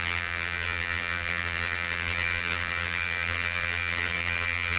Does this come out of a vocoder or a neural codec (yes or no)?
yes